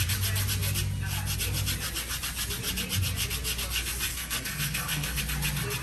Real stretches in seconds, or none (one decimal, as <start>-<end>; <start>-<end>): 0.0-4.1; 5.2-5.8